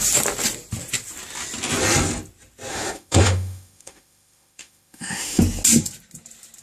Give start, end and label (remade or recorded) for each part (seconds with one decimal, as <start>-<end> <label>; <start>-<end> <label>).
0.0-2.7 recorded; 2.7-5.4 remade; 5.4-6.6 recorded